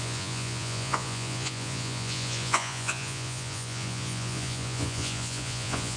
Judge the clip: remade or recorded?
remade